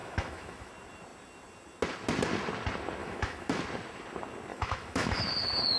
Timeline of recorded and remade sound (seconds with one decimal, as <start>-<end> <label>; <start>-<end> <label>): 0.0-0.7 remade; 0.7-3.0 recorded; 3.0-3.6 remade; 3.6-4.5 recorded; 4.5-5.2 remade; 5.2-5.8 recorded